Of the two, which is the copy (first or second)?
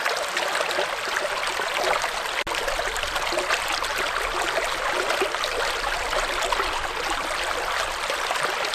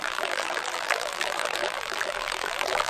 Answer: second